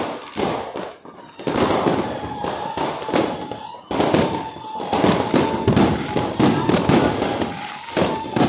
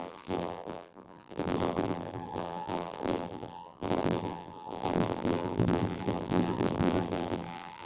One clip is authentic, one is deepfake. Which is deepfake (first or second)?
second